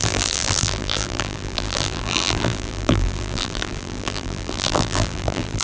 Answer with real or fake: fake